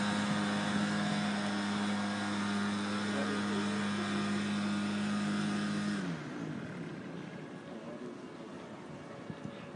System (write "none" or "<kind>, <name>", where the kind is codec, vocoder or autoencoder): none